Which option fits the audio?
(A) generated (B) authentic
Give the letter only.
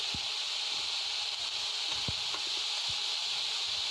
B